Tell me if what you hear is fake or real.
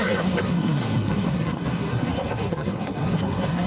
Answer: fake